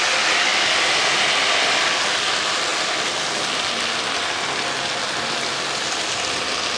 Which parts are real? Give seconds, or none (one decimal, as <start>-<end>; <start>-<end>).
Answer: 0.0-6.8